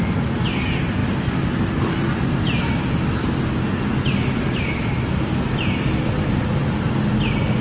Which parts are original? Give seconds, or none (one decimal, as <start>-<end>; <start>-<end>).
0.0-7.6